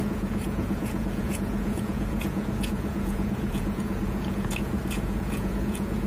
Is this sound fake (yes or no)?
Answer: yes